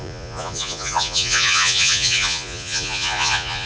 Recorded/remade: remade